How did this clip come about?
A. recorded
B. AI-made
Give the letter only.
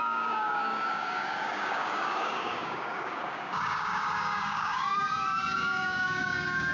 B